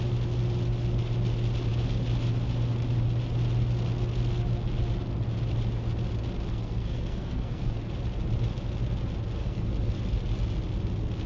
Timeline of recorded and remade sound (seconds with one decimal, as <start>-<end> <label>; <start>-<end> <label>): 0.0-6.5 recorded; 6.5-7.8 remade; 7.8-9.4 recorded; 9.4-10.0 remade; 10.0-11.3 recorded